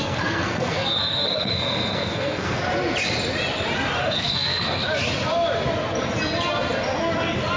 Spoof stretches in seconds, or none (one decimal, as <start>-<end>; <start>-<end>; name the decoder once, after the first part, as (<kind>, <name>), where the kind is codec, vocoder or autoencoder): 0.0-2.6 (codec, SNAC); 4.0-4.8